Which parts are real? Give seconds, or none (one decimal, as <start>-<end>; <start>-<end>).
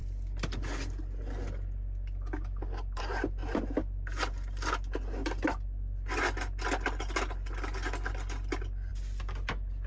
0.0-9.9